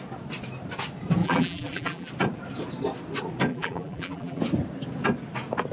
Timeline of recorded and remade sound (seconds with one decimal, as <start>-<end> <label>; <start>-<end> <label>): 0.0-1.2 recorded; 1.2-2.1 remade; 2.1-3.5 recorded; 3.5-4.4 remade; 4.4-5.7 recorded